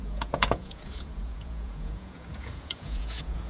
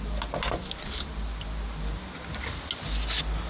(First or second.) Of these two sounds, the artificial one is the first